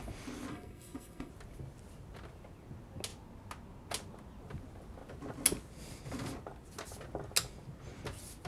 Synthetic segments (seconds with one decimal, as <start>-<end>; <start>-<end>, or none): 0.5-1.3